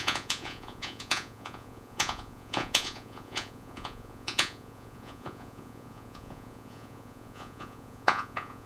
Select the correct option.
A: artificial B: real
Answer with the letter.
A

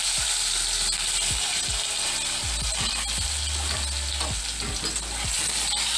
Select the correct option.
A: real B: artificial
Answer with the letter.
A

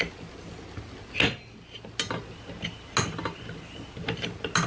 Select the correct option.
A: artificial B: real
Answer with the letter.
B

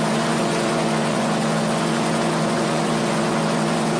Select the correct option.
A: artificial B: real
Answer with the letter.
A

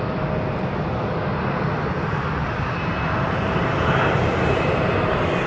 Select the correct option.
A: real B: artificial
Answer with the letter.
A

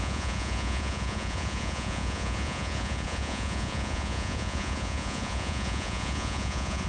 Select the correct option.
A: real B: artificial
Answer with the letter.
B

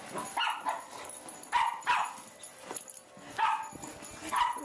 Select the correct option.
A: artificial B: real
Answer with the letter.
B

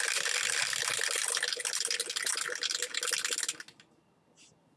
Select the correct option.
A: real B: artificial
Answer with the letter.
A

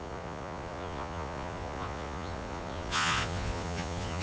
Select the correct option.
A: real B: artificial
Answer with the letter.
B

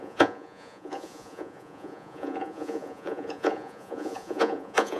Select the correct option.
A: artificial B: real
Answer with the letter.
A